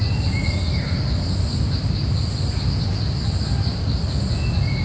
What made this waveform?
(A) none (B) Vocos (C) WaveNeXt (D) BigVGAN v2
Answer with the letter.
A